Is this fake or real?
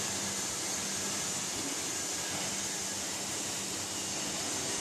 real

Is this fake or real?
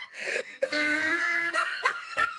fake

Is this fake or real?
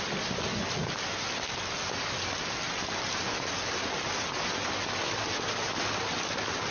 real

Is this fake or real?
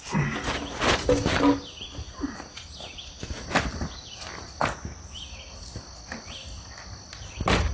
real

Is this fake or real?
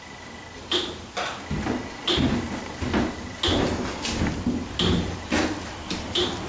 real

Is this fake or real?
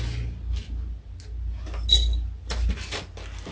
real